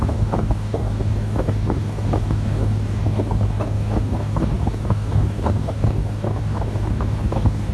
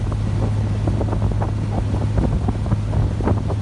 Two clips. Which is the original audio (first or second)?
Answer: second